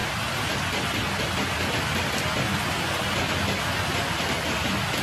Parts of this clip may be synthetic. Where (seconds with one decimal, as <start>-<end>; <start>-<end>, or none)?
none

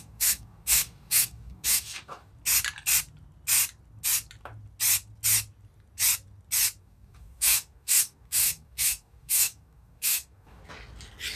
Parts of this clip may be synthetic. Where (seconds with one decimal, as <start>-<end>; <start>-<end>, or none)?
0.0-2.3; 6.8-10.6

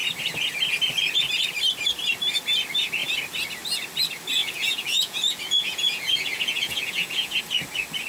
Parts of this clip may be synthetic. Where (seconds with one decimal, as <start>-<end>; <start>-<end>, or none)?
4.4-7.4

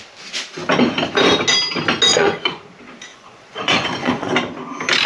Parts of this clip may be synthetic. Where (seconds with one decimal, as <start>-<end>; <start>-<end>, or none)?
2.1-2.6; 3.1-4.3

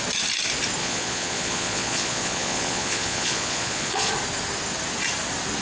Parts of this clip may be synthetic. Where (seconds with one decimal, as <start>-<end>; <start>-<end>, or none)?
0.8-4.1

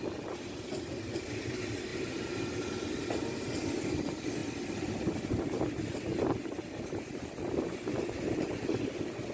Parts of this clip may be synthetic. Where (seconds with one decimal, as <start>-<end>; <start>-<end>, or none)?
1.9-2.6

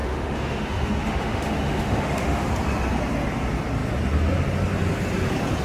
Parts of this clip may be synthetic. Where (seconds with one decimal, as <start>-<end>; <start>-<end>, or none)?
0.0-2.5

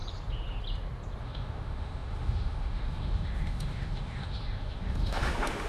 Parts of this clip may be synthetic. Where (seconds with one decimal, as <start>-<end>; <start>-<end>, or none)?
1.2-5.7